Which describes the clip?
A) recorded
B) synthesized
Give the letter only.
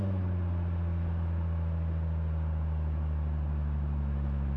A